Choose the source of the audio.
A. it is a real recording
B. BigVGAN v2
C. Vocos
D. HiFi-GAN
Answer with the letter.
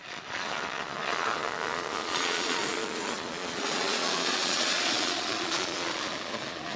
C